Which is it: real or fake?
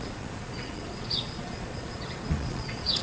fake